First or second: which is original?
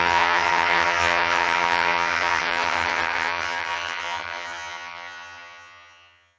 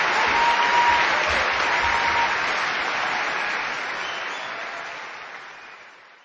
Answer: second